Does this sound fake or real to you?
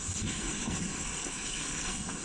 fake